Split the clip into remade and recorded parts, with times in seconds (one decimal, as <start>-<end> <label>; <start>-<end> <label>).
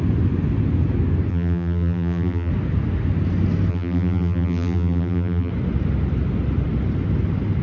0.0-1.3 recorded; 1.3-2.5 remade; 2.5-3.7 recorded; 3.7-5.5 remade; 5.5-7.6 recorded